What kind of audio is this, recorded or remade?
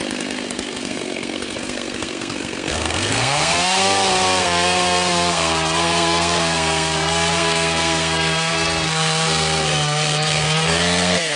remade